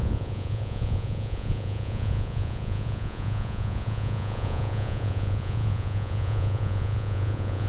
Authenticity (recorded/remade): remade